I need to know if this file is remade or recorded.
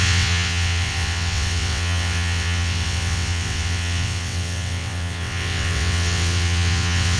remade